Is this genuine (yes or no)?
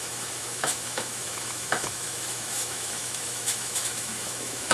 no